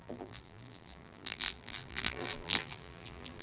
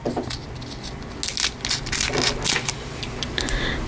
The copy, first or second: first